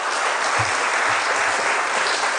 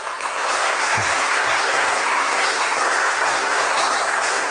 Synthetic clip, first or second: second